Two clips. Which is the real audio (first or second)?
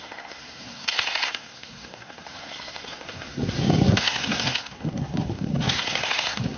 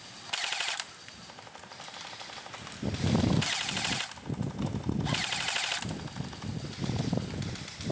second